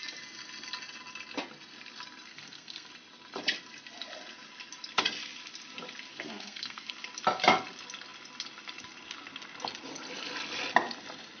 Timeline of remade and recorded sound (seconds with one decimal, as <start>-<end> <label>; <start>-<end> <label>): 0.0-2.3 recorded; 2.3-2.9 remade; 2.9-6.1 recorded; 6.1-6.9 remade; 6.9-11.4 recorded